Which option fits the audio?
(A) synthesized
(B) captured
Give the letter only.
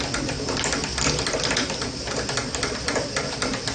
B